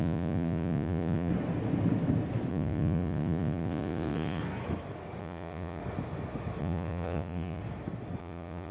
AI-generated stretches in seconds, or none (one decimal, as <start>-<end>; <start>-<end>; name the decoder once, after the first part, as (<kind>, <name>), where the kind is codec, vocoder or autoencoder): 0.0-1.3 (vocoder, Vocos); 2.5-4.4; 5.2-5.8; 6.6-7.6; 8.2-8.7